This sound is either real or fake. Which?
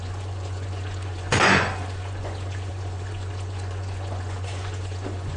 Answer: fake